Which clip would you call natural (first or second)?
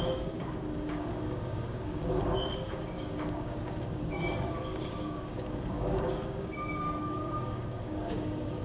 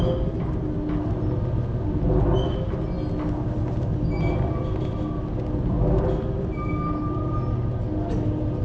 second